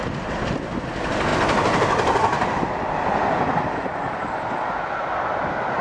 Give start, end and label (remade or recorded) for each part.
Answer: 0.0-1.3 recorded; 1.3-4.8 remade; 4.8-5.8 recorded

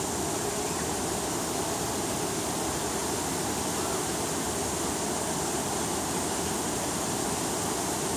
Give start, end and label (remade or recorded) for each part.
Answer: 0.0-8.2 recorded

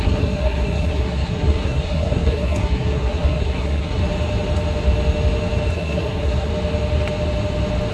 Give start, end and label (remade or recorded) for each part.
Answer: 0.0-4.0 remade; 4.0-5.7 recorded; 5.7-6.5 remade; 6.5-7.9 recorded

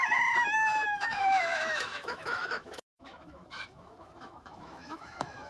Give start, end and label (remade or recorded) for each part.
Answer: 0.0-5.5 remade

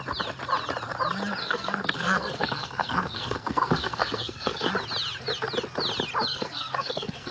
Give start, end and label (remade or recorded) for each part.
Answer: 0.0-1.4 recorded; 1.4-4.7 remade; 4.7-6.3 recorded; 6.3-7.3 remade

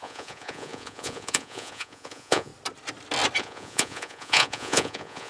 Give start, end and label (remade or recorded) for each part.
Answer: 0.0-2.5 remade; 2.5-3.4 recorded; 3.4-5.3 remade

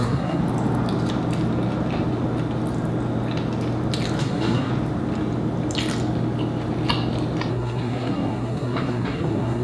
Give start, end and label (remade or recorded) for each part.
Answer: 0.0-0.4 remade; 0.4-4.2 recorded; 4.2-4.7 remade; 4.7-7.5 recorded; 7.5-9.6 remade

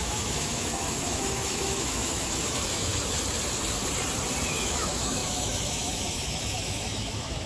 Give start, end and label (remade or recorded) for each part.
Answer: 0.0-2.9 remade; 2.9-4.5 recorded; 4.5-7.5 remade